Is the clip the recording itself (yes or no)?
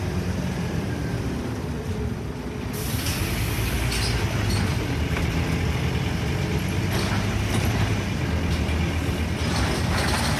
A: yes